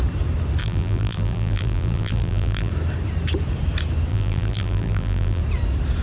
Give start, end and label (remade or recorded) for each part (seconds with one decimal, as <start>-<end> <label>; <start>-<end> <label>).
0.0-0.6 recorded; 0.6-2.7 remade; 2.7-4.1 recorded; 4.1-5.4 remade; 5.4-6.0 recorded